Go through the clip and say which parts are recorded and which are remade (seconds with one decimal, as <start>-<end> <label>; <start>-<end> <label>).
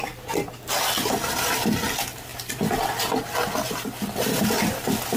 0.0-5.2 recorded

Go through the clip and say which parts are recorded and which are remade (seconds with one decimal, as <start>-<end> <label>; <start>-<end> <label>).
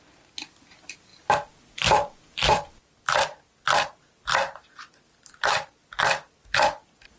0.0-7.2 recorded